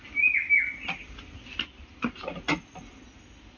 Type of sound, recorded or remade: recorded